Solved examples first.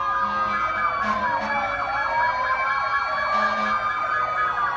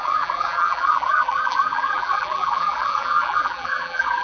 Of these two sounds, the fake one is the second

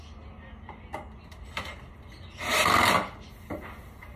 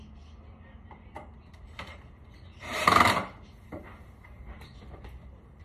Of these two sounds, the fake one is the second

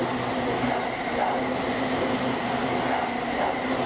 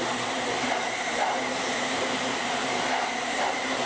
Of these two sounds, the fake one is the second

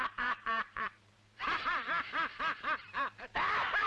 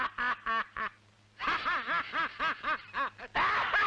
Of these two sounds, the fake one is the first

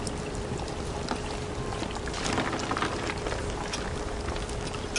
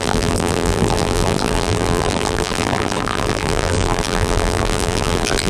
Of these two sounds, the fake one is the second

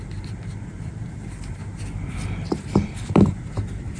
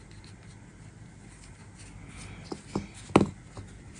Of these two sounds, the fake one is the first